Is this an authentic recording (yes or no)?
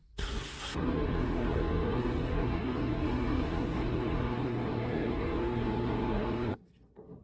no